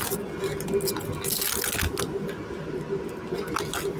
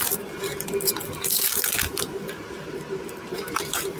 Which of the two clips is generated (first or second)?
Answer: second